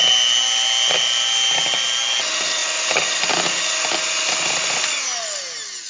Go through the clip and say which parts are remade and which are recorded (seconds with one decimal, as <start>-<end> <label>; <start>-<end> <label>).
0.0-5.9 recorded